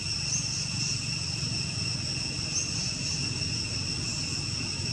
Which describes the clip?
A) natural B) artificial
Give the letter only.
A